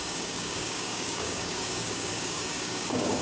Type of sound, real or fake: fake